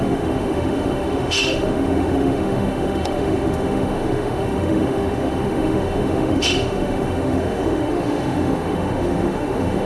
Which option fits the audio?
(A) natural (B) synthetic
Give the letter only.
B